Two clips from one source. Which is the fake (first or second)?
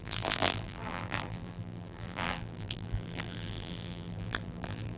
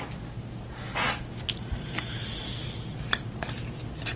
first